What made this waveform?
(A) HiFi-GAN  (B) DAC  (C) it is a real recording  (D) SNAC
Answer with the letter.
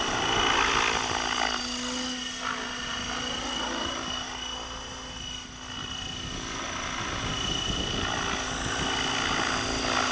C